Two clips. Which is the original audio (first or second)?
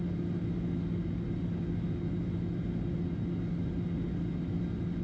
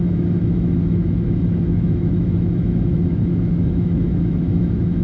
first